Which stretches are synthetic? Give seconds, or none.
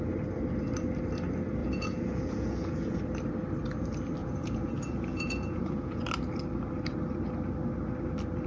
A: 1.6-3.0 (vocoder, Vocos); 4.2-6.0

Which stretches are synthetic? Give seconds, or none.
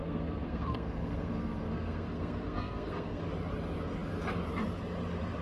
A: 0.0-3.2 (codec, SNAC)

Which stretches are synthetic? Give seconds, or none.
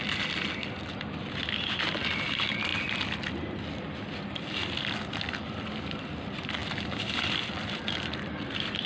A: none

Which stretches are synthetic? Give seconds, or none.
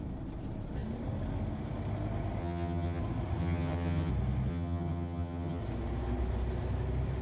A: 2.4-3.0 (vocoder, HiFi-GAN); 3.4-4.1; 4.5-5.6